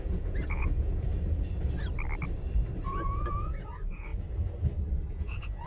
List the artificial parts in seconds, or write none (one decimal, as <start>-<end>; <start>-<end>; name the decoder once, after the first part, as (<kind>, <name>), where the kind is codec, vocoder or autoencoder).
0.0-1.1 (vocoder, Vocos); 2.8-4.1; 5.1-5.7

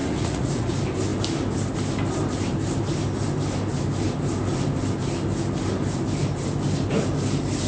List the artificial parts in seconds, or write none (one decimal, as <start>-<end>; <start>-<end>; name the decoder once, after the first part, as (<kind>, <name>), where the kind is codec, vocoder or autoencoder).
0.0-0.7 (vocoder, Vocos)

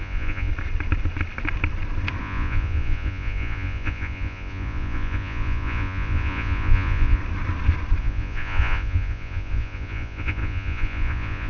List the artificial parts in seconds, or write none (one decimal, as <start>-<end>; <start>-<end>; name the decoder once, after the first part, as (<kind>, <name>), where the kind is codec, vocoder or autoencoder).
0.0-0.5 (vocoder, Vocos); 2.2-7.2; 8.0-11.5

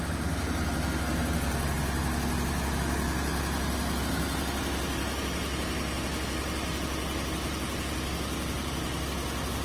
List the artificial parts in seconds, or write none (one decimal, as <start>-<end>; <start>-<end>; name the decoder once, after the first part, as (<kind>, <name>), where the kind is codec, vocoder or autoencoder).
none

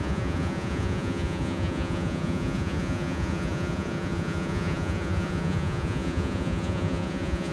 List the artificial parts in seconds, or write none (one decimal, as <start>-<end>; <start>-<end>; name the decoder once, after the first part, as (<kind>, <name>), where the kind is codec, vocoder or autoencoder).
0.0-7.5 (vocoder, Vocos)

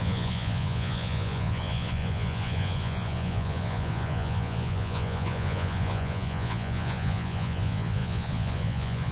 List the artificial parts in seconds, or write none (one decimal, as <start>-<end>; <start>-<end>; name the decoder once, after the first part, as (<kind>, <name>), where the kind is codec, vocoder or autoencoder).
0.0-9.1 (vocoder, Vocos)

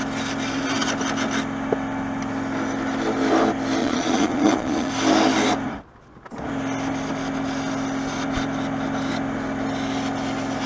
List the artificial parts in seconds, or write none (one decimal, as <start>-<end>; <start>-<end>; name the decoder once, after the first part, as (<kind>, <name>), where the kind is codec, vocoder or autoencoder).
3.8-4.9 (vocoder, Vocos)

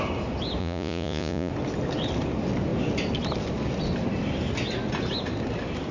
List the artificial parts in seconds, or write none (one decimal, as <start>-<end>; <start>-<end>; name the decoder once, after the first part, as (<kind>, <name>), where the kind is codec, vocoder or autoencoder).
0.6-1.5 (vocoder, Vocos)